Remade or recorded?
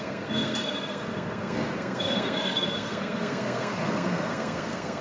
remade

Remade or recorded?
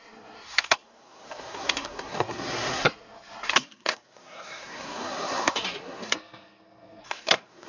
remade